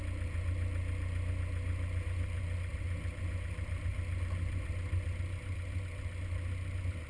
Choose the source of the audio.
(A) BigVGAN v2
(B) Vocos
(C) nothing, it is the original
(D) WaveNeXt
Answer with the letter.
C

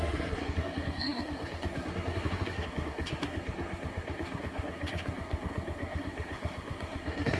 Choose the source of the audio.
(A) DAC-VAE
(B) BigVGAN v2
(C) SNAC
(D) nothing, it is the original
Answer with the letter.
C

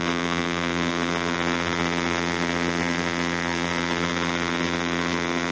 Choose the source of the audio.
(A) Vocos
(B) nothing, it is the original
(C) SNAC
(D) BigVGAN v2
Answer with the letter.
D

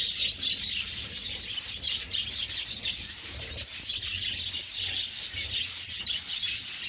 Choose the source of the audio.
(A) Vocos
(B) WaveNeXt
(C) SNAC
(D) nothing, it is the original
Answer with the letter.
D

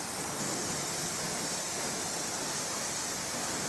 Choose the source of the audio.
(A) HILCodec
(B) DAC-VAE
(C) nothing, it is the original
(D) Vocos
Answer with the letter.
C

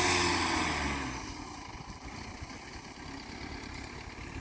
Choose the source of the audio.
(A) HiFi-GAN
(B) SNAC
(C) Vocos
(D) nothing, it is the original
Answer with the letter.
D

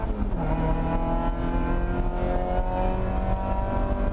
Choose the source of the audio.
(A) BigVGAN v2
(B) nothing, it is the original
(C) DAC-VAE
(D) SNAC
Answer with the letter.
B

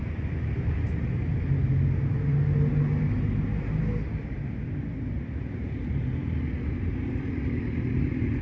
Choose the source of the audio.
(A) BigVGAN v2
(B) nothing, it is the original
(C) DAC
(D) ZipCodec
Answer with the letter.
B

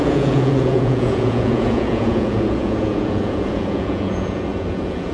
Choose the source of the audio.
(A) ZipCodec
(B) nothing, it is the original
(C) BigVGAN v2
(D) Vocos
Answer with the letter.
D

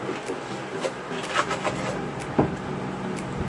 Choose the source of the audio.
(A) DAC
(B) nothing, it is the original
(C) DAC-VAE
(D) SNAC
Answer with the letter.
B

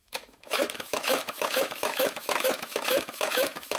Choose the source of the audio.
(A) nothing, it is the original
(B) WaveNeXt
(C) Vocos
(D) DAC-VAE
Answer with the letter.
D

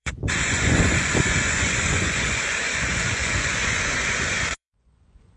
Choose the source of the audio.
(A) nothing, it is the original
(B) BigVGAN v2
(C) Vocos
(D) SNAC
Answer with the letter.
C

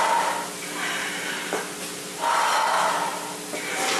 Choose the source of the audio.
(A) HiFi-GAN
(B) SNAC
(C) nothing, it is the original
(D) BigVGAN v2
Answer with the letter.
C